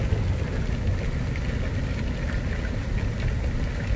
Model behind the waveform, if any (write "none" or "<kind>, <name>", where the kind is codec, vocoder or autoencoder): none